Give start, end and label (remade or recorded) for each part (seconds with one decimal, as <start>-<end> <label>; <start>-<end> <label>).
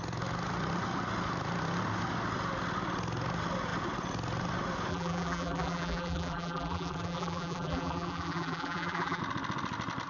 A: 0.0-4.9 recorded; 4.9-9.2 remade; 9.2-10.1 recorded